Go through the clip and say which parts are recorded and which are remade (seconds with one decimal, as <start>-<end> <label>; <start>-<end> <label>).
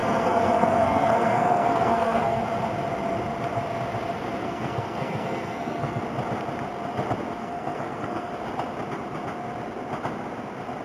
0.0-2.4 remade; 2.4-4.4 recorded; 4.4-6.0 remade; 6.0-7.4 recorded; 7.4-8.3 remade; 8.3-10.8 recorded